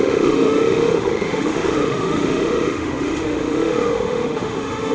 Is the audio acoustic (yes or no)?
no